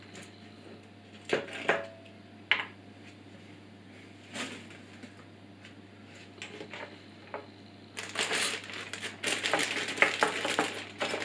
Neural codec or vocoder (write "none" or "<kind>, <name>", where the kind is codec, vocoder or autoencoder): none